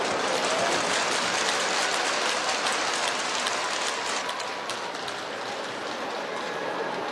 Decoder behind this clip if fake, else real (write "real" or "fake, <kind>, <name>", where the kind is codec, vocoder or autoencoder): real